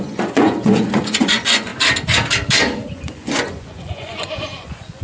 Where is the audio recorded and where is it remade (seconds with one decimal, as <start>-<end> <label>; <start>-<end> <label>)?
0.0-1.7 remade; 1.7-2.8 recorded; 2.8-5.0 remade